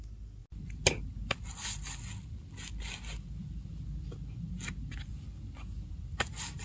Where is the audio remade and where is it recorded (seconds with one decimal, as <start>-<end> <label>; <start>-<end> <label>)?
0.0-6.6 recorded